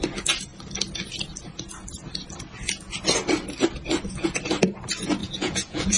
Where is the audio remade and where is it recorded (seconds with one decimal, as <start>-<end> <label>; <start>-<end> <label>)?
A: 0.0-5.2 recorded; 5.2-6.0 remade